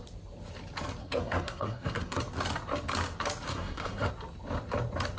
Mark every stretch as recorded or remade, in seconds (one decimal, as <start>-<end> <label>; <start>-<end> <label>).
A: 0.0-1.0 recorded; 1.0-2.2 remade; 2.2-3.5 recorded; 3.5-4.1 remade; 4.1-5.2 recorded